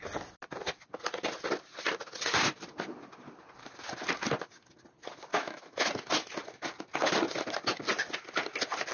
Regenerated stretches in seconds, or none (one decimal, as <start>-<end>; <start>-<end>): 5.3-5.9